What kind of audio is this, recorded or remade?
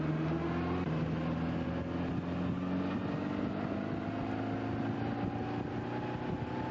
recorded